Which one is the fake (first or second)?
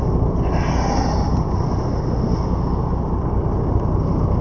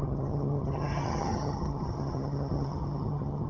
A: second